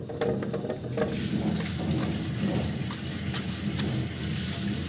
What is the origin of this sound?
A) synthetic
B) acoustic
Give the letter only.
B